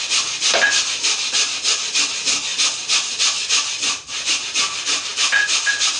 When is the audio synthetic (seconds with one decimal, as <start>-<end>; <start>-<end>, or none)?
none